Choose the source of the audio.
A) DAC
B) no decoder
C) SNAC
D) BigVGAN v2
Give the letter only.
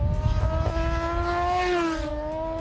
B